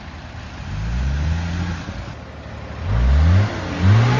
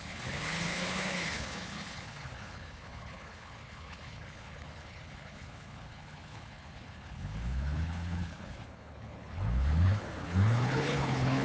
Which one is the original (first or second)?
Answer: first